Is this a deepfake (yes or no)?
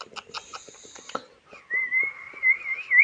no